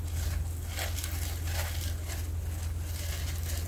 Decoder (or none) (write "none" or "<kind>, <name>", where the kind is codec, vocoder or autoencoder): none